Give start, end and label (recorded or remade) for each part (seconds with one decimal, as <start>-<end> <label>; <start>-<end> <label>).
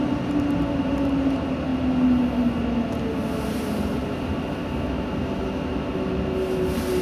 0.0-7.0 recorded